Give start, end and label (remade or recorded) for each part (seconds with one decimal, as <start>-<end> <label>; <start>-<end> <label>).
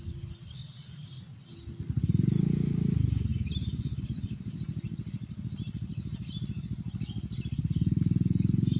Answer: 0.0-8.8 recorded